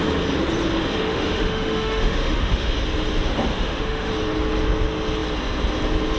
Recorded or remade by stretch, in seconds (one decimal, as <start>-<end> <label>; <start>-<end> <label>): 0.0-1.1 recorded; 1.1-2.7 remade; 2.7-3.5 recorded; 3.5-4.1 remade; 4.1-6.2 recorded